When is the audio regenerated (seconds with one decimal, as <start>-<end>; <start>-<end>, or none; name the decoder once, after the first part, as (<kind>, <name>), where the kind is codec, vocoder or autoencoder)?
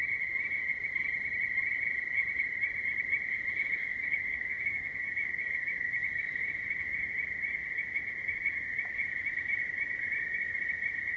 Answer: 3.8-6.2 (codec, DAC)